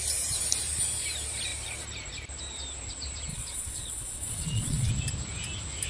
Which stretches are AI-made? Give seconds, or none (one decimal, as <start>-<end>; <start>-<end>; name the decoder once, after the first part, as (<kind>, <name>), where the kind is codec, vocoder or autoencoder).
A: 3.3-4.9 (vocoder, Vocos)